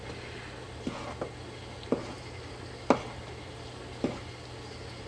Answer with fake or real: real